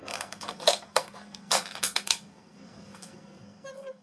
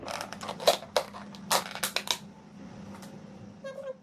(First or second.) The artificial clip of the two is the first